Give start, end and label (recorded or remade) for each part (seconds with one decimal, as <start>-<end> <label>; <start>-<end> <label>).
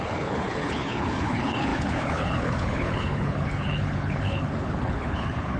0.0-5.6 remade